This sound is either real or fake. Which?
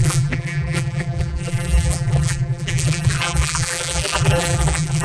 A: fake